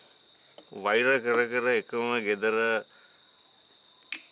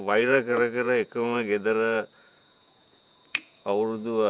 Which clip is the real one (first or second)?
first